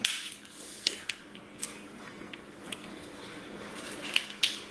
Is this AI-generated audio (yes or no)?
yes